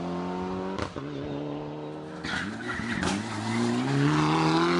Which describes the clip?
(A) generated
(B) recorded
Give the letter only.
B